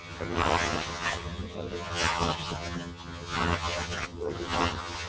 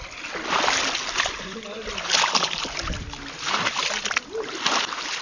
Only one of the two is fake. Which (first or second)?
first